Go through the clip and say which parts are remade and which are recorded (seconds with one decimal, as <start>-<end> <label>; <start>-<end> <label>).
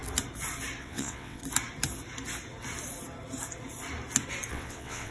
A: 0.0-0.8 recorded; 0.8-1.4 remade; 1.4-4.5 recorded; 4.5-5.1 remade